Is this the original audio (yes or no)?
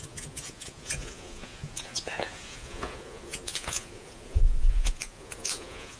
no